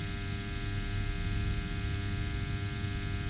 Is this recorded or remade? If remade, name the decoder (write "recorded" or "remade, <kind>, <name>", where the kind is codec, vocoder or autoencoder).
recorded